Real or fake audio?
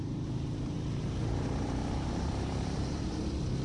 fake